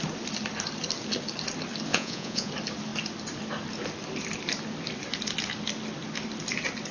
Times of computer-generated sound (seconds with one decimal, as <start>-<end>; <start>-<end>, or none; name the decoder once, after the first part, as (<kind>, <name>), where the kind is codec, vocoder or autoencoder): 1.9-2.5 (vocoder, Vocos)